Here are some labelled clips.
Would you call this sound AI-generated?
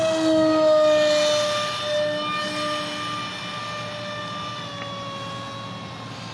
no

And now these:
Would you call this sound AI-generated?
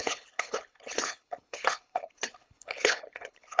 yes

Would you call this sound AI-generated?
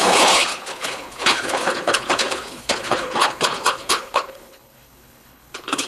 yes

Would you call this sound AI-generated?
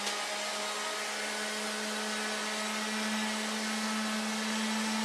no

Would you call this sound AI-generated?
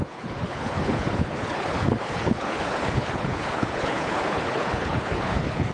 yes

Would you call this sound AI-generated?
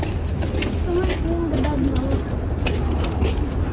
no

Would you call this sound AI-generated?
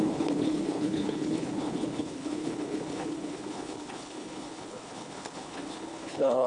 yes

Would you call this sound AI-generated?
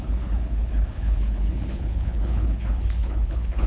yes